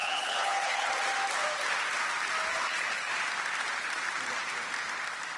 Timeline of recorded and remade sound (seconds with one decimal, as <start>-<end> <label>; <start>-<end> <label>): 0.0-0.9 remade; 0.9-2.5 recorded; 2.5-3.1 remade; 3.1-5.4 recorded

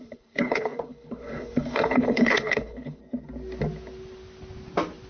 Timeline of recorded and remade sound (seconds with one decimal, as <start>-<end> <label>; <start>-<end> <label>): 0.0-3.0 remade; 3.0-5.1 recorded

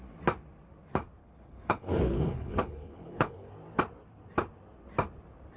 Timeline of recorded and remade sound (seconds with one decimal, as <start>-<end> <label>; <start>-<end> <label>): 0.0-1.2 recorded; 1.2-3.5 remade; 3.5-5.6 recorded

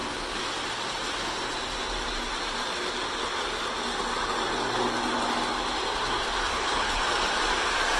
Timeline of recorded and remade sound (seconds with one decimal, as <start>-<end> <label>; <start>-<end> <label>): 0.0-6.5 recorded; 6.5-7.0 remade; 7.0-8.0 recorded